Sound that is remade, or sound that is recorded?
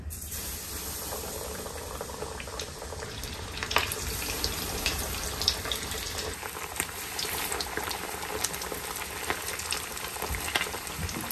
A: remade